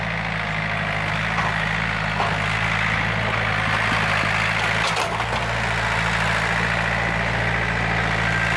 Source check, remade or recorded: recorded